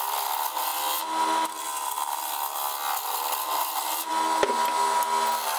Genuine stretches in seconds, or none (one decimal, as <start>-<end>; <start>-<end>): 0.0-5.6